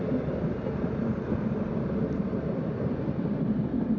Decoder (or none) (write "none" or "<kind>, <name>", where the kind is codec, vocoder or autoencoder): none